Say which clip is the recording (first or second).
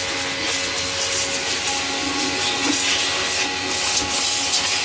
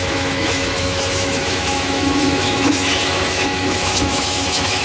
first